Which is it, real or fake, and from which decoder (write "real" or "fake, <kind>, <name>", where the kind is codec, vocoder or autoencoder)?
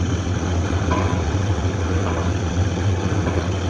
fake, vocoder, WaveNeXt